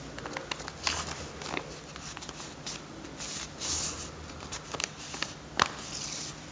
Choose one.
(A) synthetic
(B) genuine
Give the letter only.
B